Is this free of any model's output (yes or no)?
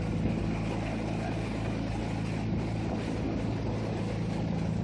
yes